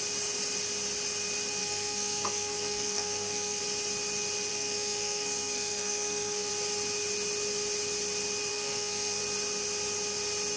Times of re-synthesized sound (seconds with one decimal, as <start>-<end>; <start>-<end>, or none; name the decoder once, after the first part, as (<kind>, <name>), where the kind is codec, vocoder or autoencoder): 1.6-3.6 (codec, SNAC); 4.5-6.5; 8.5-9.2